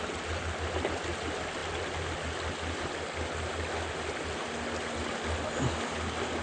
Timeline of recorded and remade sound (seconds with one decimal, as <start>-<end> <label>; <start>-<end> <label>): 0.0-6.4 recorded